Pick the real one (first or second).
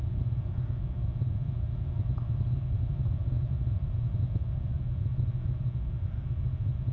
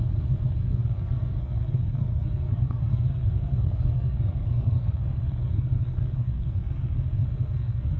first